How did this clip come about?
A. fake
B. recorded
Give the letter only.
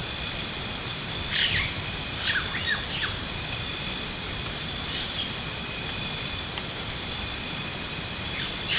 A